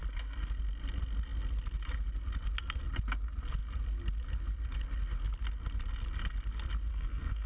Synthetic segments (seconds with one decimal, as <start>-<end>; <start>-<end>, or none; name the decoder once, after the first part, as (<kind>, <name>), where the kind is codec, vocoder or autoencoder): 6.9-7.5 (codec, SNAC)